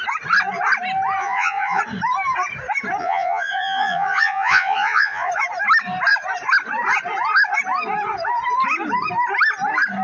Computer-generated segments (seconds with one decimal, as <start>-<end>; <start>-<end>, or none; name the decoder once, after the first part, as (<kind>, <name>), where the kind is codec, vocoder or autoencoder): 1.2-1.8 (vocoder, Vocos); 3.0-5.3